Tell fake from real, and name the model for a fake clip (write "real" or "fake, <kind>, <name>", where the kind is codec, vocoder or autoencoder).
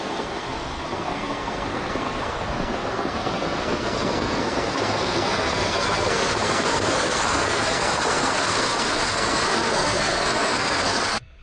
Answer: fake, codec, SNAC